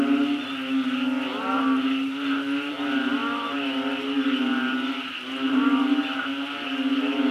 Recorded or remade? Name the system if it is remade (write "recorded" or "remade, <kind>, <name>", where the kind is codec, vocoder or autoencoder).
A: recorded